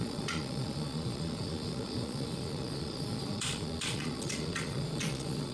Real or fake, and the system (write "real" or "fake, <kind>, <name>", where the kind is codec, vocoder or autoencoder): fake, vocoder, Vocos